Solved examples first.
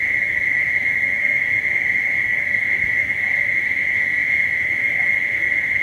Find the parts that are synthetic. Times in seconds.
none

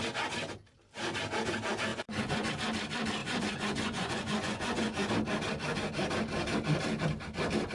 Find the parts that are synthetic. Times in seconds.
1.9-2.5 (vocoder, Vocos); 3.2-5.1